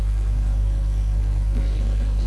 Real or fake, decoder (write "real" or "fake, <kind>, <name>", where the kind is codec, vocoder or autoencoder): fake, codec, SNAC